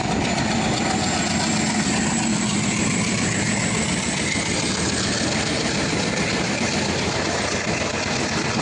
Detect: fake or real real